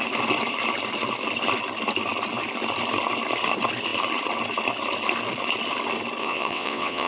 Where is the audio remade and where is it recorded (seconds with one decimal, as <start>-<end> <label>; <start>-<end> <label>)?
0.0-6.2 recorded; 6.2-7.1 remade